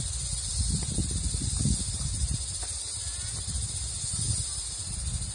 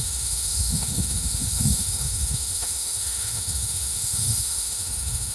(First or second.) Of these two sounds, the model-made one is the second